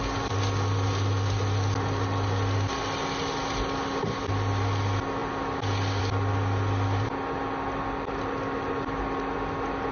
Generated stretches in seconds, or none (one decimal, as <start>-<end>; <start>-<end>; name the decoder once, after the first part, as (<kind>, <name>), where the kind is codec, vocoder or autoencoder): none